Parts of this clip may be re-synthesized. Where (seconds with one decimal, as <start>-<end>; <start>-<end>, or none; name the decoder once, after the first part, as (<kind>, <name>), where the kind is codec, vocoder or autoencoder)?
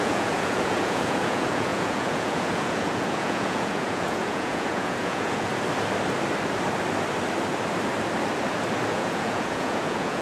0.0-5.5 (vocoder, Vocos); 8.9-10.2